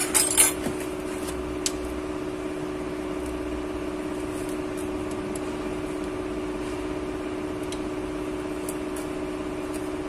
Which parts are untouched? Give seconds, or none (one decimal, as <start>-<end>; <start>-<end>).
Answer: 0.0-10.1